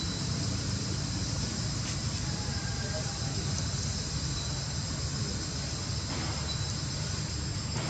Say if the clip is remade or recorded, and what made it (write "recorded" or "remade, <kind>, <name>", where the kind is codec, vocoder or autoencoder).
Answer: recorded